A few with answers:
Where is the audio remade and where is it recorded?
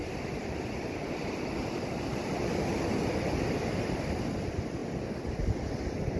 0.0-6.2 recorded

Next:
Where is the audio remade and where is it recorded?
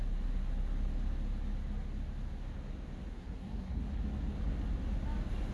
0.0-3.1 recorded; 3.1-3.8 remade; 3.8-5.5 recorded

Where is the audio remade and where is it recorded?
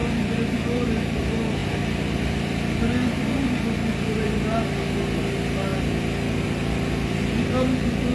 0.0-8.1 recorded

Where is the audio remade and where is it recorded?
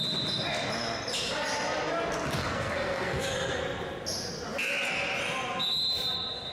0.0-2.4 recorded; 2.4-3.6 remade; 3.6-6.5 recorded